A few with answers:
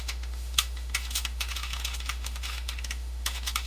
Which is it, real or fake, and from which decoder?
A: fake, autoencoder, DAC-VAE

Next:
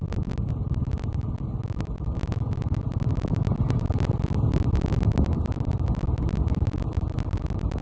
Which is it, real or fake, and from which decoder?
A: real